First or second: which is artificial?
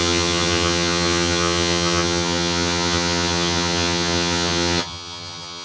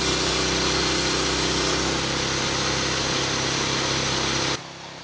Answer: first